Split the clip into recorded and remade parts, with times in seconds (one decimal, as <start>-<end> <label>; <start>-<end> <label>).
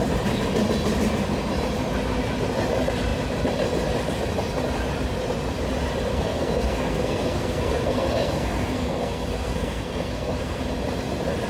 0.0-6.1 recorded; 6.1-10.6 remade; 10.6-11.5 recorded